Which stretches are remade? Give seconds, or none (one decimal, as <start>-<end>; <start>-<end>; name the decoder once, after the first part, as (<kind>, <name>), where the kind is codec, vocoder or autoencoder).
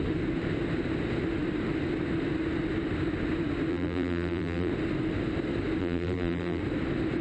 3.7-4.7 (vocoder, BigVGAN v2); 5.8-6.6